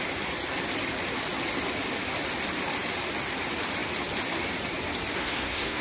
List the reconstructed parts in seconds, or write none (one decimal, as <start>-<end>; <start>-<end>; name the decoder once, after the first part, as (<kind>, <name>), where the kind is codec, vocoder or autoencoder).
5.2-5.8 (codec, SNAC)